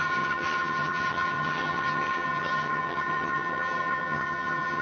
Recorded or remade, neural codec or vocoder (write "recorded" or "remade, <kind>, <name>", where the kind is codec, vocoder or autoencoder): remade, vocoder, HiFi-GAN